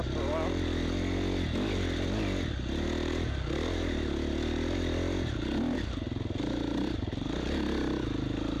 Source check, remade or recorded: recorded